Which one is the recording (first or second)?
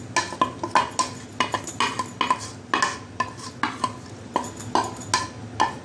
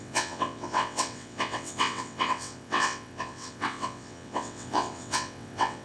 first